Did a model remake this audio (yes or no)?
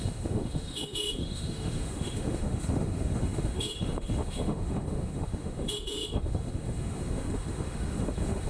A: yes